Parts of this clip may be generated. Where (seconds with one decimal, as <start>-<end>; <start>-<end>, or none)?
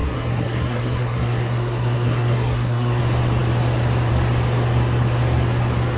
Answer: 0.0-3.0